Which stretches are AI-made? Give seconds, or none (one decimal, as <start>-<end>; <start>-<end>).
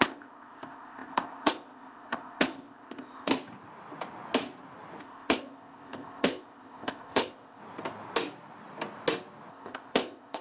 0.0-3.3; 5.0-7.6; 9.5-10.4